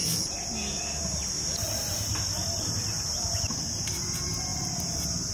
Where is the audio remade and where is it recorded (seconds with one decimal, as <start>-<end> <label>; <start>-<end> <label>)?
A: 0.0-2.1 recorded; 2.1-3.9 remade; 3.9-5.3 recorded